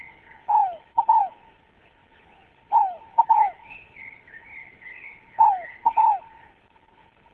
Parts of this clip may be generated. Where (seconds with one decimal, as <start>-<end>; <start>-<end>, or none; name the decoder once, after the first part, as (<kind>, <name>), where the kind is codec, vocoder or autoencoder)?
0.0-7.3 (codec, HILCodec)